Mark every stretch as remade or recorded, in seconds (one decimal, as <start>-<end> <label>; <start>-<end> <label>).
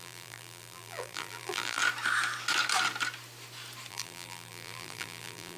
0.0-1.8 remade; 1.8-3.9 recorded; 3.9-5.6 remade